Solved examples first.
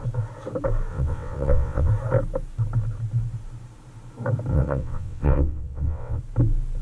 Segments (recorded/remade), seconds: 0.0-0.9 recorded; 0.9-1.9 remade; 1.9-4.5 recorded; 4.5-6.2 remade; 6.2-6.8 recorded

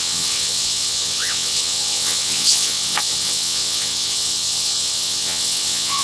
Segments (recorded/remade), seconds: 0.0-6.0 remade

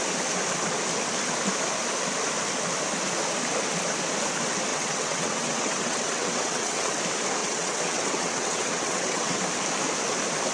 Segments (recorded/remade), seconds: 0.0-4.7 recorded; 4.7-7.0 remade; 7.0-7.4 recorded; 7.4-9.4 remade; 9.4-10.5 recorded

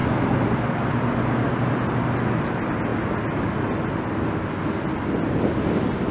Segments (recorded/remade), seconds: 0.0-6.1 recorded

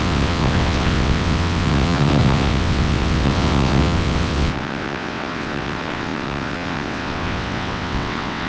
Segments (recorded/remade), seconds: 0.0-8.5 remade